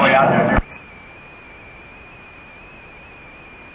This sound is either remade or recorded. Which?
recorded